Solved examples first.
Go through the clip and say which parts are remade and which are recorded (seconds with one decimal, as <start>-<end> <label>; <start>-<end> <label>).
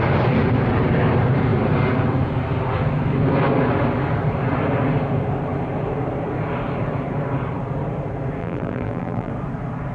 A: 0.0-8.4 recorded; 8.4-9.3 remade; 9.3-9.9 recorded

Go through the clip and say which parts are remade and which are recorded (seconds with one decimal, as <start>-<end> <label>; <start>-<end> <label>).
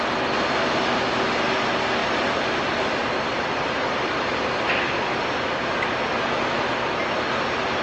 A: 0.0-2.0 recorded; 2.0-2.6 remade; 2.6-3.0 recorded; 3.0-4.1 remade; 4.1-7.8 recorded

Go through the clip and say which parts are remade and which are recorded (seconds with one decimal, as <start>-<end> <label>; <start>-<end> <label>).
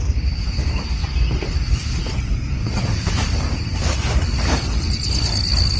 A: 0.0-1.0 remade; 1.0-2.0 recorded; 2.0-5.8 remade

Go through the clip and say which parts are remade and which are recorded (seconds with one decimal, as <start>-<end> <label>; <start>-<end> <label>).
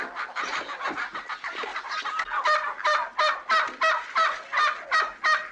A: 0.0-5.5 recorded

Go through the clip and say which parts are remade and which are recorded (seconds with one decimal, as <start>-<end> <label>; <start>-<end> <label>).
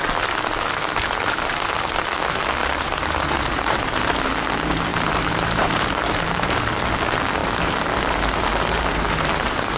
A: 0.0-2.6 recorded; 2.6-4.0 remade; 4.0-4.9 recorded; 4.9-6.7 remade; 6.7-7.4 recorded; 7.4-9.8 remade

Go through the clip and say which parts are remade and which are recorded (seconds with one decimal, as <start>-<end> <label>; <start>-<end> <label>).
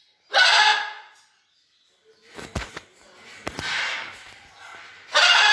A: 0.0-5.5 recorded